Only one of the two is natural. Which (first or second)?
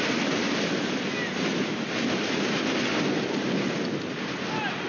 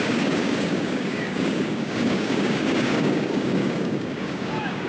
first